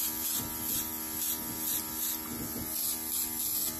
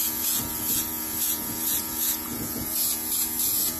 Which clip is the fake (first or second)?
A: second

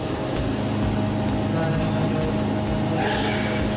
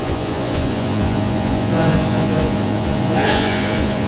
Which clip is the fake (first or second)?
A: second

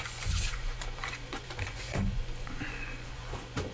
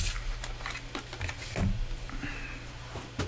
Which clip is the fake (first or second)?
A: first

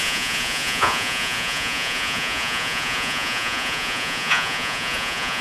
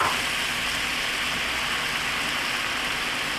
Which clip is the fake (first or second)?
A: first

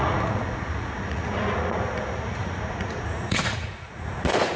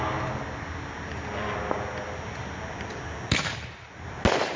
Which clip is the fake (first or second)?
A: first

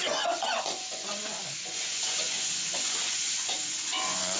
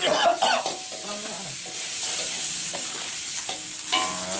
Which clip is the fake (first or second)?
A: first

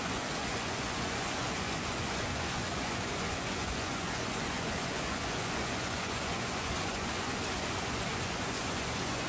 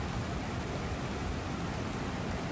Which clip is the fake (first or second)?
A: first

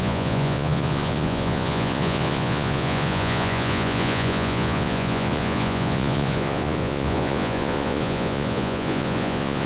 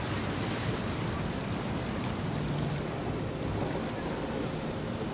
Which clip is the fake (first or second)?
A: first